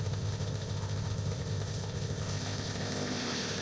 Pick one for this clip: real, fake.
fake